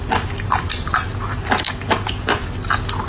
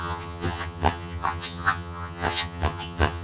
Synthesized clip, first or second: second